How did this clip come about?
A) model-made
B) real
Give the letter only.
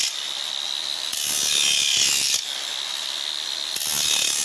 B